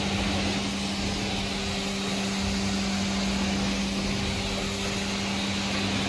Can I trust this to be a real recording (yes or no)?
yes